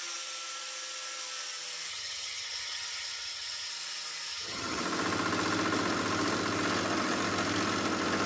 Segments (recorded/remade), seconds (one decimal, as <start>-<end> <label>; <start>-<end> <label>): 0.0-1.9 recorded; 1.9-3.7 remade; 3.7-4.3 recorded; 4.3-4.8 remade; 4.8-8.3 recorded